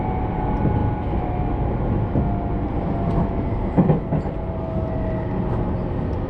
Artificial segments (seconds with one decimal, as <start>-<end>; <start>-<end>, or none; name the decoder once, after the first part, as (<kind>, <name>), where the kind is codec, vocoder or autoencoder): none